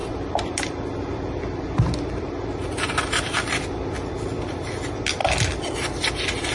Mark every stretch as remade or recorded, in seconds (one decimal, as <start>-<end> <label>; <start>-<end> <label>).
0.0-6.5 recorded